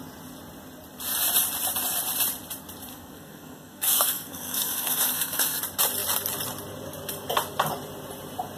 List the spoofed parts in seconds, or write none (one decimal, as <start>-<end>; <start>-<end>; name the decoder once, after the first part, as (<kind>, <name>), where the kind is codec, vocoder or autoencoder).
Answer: 2.9-5.6 (codec, SNAC)